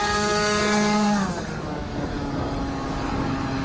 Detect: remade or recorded remade